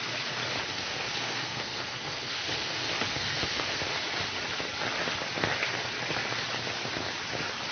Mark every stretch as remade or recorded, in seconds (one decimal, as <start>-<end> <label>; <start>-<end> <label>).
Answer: 0.0-0.7 recorded; 0.7-3.8 remade; 3.8-7.7 recorded

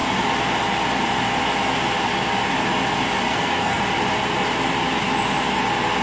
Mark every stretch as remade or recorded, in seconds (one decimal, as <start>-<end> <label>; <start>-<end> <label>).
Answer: 0.0-3.3 recorded; 3.3-3.8 remade; 3.8-6.0 recorded

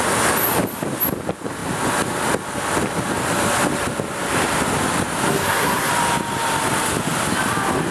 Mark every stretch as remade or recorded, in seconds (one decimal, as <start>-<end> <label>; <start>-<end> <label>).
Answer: 0.0-5.3 recorded; 5.3-5.9 remade; 5.9-7.9 recorded

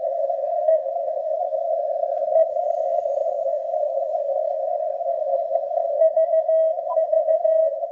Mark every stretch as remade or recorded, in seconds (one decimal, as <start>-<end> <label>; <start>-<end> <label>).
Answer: 0.0-1.7 remade; 1.7-2.5 recorded; 2.5-7.9 remade

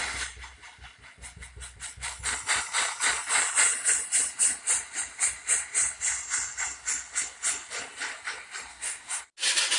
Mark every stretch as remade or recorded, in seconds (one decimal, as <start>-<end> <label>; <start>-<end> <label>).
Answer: 0.0-8.7 recorded; 8.7-9.2 remade; 9.2-9.8 recorded

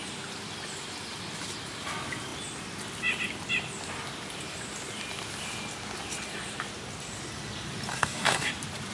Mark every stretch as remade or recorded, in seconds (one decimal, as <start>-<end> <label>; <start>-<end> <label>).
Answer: 0.0-7.9 recorded; 7.9-8.5 remade; 8.5-8.9 recorded

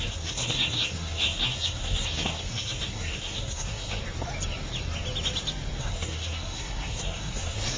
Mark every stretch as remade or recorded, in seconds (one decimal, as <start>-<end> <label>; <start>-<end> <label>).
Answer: 0.0-4.0 remade; 4.0-5.8 recorded; 5.8-7.8 remade

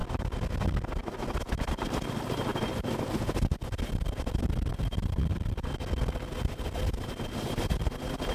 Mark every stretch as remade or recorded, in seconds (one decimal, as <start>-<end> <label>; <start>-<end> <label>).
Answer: 0.0-8.3 recorded